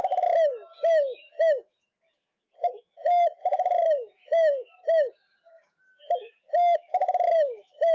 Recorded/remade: remade